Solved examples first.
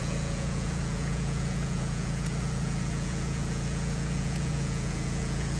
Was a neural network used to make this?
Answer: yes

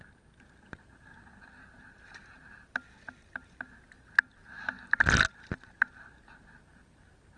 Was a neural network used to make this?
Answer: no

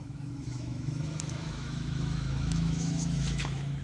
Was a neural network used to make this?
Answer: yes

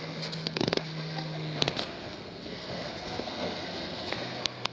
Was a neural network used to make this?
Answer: yes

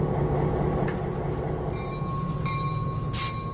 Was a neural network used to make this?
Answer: no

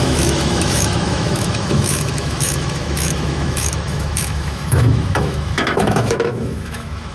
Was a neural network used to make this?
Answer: yes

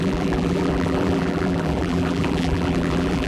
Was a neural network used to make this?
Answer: yes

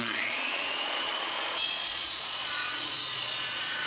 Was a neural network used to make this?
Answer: yes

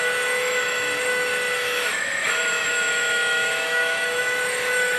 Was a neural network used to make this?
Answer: yes